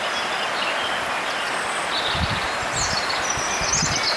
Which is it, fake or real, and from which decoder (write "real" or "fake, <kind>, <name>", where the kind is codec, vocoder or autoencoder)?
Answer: real